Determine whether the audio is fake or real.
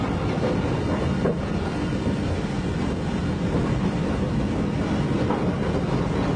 real